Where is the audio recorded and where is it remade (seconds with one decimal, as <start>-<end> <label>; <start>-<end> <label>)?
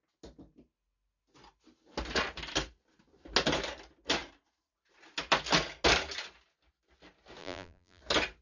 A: 0.0-7.4 recorded; 7.4-8.0 remade; 8.0-8.4 recorded